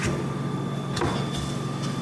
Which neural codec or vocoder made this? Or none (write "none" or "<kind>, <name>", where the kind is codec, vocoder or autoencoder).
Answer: none